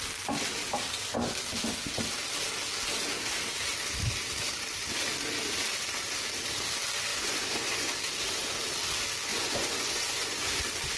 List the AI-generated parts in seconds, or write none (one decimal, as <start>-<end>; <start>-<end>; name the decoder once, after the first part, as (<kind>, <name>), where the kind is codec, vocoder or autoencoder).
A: 7.1-7.9 (vocoder, Vocos); 9.3-10.6